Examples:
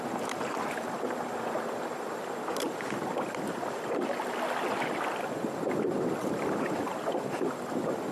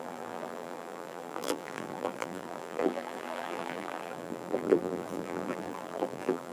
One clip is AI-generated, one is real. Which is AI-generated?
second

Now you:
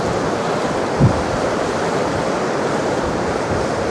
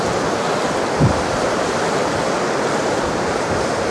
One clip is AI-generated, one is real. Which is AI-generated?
first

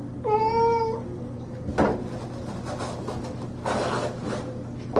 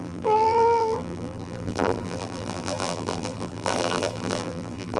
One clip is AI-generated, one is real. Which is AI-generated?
second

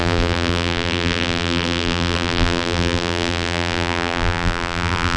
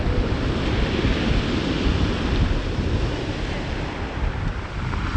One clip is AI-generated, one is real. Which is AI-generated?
first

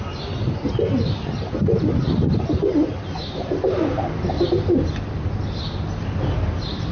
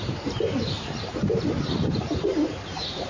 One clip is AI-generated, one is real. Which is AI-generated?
second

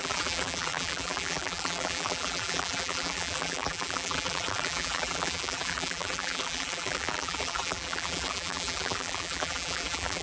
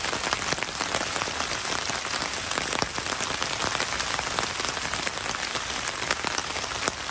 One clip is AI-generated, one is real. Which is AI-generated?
first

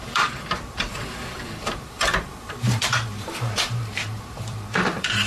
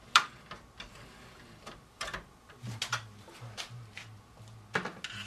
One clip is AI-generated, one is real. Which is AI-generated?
first